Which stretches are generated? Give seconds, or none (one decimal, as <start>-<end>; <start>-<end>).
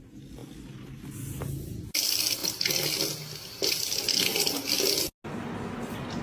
none